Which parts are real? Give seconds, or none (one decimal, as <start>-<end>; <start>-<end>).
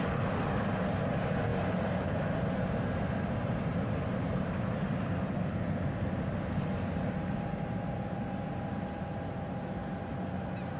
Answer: 0.0-10.8